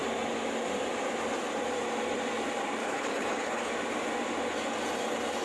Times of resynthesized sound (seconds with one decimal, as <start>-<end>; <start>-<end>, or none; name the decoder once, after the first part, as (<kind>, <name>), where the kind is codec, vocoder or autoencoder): 2.8-3.7 (codec, HILCodec)